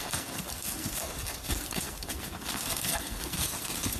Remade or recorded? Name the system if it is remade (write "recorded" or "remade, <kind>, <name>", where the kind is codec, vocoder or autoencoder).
remade, codec, SNAC